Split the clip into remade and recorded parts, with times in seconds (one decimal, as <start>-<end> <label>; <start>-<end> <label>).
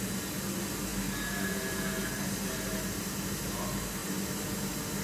0.0-0.9 recorded; 0.9-2.5 remade; 2.5-4.0 recorded; 4.0-5.0 remade